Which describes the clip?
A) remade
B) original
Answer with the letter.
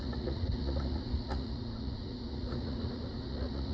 A